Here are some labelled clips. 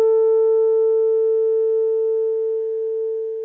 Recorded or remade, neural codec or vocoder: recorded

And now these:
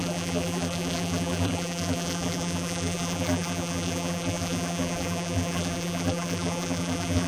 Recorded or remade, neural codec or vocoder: remade, vocoder, BigVGAN v2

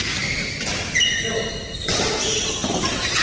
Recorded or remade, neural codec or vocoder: recorded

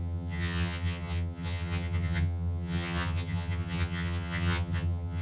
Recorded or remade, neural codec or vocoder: remade, vocoder, HiFi-GAN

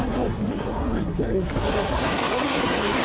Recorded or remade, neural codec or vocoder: remade, codec, SNAC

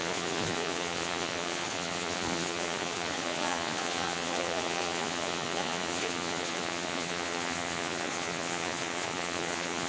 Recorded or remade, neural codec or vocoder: remade, vocoder, Vocos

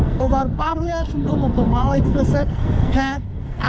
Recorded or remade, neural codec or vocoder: remade, codec, SNAC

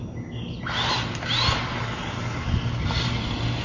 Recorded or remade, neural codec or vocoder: recorded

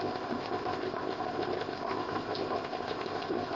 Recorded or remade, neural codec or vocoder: remade, codec, ZipCodec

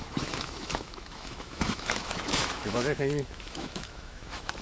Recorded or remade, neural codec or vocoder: remade, autoencoder, DAC-VAE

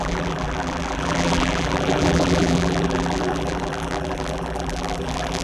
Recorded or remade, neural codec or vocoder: remade, vocoder, BigVGAN v2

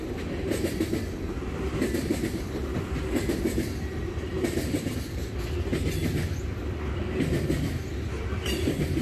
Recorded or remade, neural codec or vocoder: recorded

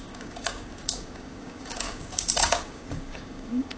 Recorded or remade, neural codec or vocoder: remade, codec, DAC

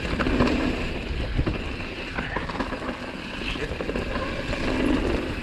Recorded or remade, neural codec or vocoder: recorded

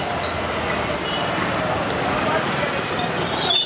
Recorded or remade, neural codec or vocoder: recorded